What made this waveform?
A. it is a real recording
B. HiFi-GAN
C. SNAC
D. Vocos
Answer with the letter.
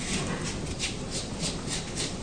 A